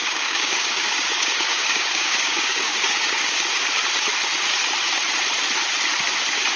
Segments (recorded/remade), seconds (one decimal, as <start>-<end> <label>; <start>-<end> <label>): 0.0-3.6 remade; 3.6-6.6 recorded